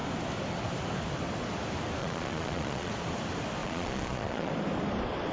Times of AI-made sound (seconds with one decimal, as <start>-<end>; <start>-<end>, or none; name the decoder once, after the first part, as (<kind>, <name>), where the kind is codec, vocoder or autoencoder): 2.0-2.9 (vocoder, Vocos); 3.6-4.5